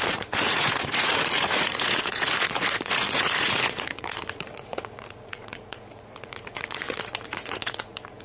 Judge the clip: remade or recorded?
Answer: remade